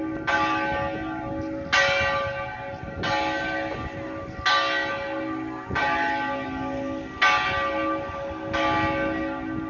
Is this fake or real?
real